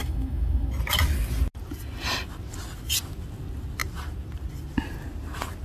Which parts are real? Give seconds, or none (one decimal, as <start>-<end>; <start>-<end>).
0.7-5.6